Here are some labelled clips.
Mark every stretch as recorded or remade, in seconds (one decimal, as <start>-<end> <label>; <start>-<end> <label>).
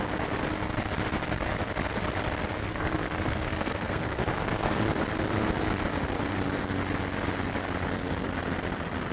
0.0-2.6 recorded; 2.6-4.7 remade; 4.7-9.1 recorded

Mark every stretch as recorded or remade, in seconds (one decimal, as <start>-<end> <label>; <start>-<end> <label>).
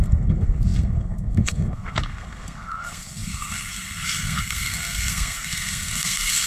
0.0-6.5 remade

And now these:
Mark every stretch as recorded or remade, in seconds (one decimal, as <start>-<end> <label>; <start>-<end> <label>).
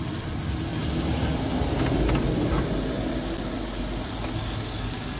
0.0-5.2 recorded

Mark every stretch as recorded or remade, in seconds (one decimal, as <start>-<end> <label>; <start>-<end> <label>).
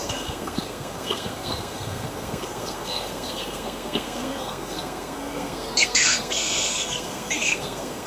0.0-8.1 remade